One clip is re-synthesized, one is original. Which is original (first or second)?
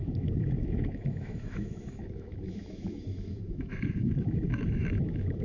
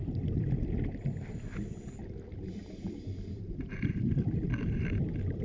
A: second